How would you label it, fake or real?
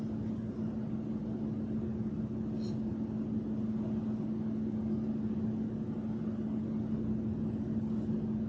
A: real